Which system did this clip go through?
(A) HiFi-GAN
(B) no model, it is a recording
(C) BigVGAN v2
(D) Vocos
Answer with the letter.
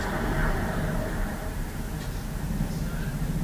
C